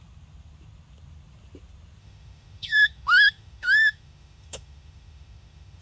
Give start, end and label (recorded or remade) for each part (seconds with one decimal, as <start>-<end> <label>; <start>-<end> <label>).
0.0-2.0 recorded; 2.0-5.8 remade